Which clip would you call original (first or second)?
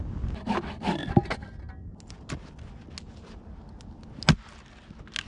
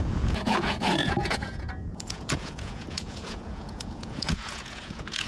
first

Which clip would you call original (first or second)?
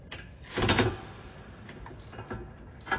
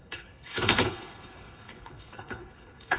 first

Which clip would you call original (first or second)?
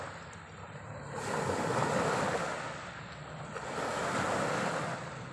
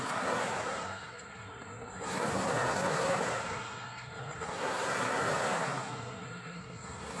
first